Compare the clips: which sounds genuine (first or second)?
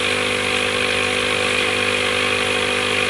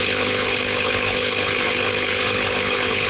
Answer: first